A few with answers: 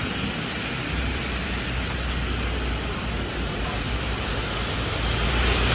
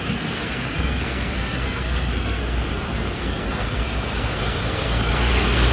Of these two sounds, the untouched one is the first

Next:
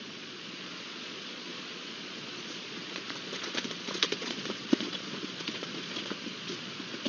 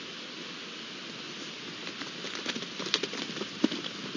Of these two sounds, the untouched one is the second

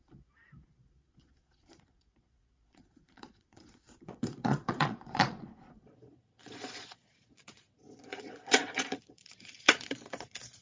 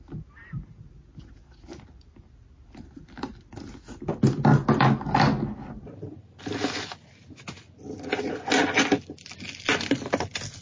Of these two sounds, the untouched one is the second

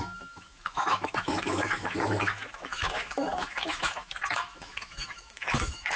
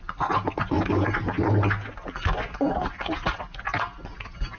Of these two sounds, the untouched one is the second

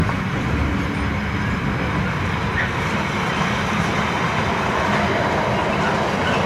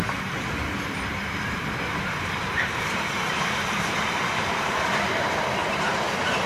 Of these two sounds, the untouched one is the first